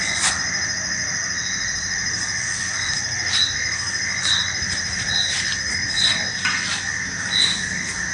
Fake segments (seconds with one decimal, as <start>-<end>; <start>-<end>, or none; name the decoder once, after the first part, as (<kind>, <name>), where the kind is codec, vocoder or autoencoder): none